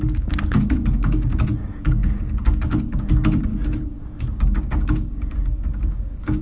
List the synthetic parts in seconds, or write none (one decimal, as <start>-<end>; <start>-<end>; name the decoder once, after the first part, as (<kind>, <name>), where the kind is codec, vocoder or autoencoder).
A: 0.0-6.4 (codec, DAC)